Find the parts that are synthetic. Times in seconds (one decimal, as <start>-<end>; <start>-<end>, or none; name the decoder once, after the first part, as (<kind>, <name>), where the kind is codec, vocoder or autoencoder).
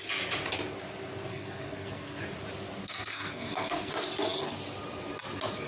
1.3-2.2 (codec, SNAC); 2.8-3.9